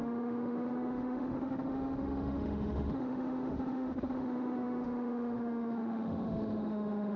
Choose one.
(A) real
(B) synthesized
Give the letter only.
B